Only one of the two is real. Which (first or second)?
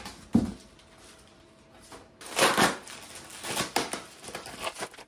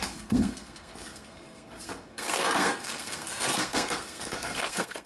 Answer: first